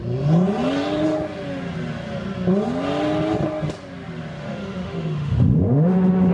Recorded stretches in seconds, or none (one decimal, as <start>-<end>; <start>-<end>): 0.0-4.4